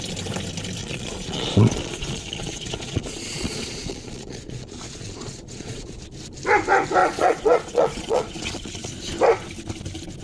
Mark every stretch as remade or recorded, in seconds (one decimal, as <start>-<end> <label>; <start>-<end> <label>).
0.0-0.8 recorded; 0.8-6.0 remade; 6.0-7.0 recorded; 7.0-8.9 remade; 8.9-10.2 recorded